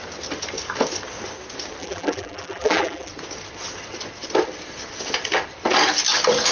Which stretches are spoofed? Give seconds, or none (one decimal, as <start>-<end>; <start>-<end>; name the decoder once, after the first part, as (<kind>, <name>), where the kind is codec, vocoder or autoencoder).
1.8-3.1 (vocoder, BigVGAN v2)